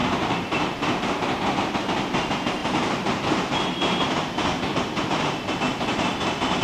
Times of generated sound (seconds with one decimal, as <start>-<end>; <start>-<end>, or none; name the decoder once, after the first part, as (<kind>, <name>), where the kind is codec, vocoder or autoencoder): 0.0-1.6 (vocoder, BigVGAN v2); 2.6-4.1; 4.7-5.5